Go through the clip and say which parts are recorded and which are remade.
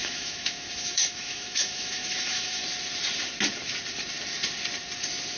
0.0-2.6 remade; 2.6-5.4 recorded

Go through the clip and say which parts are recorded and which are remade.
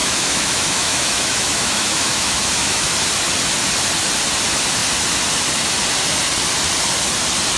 0.0-2.9 remade; 2.9-7.6 recorded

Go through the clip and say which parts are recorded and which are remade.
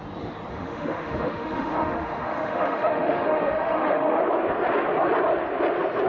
0.0-0.5 recorded; 0.5-4.2 remade; 4.2-6.1 recorded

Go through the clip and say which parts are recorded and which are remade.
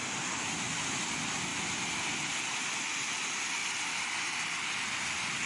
0.0-5.5 recorded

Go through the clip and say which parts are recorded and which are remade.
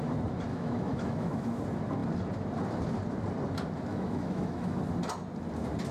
0.0-0.5 recorded; 0.5-1.6 remade; 1.6-3.9 recorded; 3.9-4.8 remade; 4.8-5.9 recorded